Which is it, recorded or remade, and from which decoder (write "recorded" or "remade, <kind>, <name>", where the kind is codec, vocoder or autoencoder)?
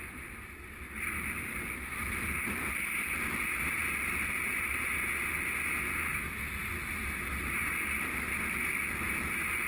recorded